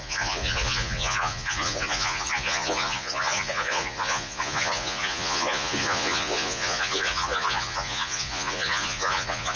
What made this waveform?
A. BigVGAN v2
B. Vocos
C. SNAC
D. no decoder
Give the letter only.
B